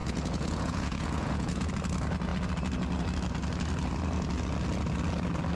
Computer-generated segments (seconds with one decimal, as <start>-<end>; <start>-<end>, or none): 0.0-1.7